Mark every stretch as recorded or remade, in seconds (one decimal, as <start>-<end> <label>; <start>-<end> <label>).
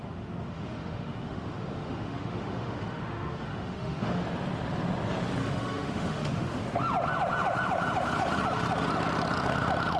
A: 0.0-4.2 remade; 4.2-5.4 recorded; 5.4-6.6 remade; 6.6-10.0 recorded